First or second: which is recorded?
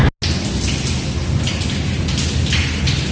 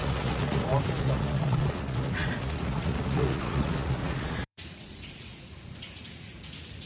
first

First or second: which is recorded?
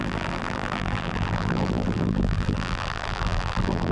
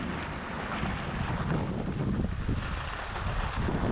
second